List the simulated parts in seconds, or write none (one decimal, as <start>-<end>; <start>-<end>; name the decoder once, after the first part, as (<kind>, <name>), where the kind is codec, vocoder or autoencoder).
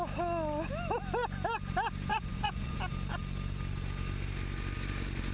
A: 2.1-2.8 (vocoder, Vocos)